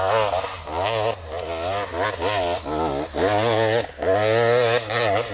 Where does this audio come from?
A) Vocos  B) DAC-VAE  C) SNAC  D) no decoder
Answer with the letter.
D